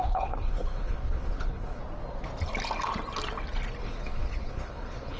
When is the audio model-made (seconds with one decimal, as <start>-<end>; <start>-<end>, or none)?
0.0-1.8; 3.8-5.2